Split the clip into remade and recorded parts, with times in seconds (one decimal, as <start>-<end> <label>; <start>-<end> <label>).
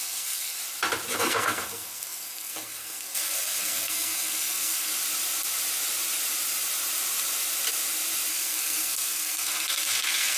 0.0-0.6 remade; 0.6-1.2 recorded; 1.2-4.9 remade; 4.9-8.3 recorded; 8.3-10.4 remade